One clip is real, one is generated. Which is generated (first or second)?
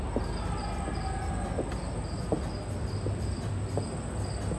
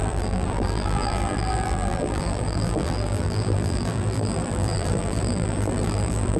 second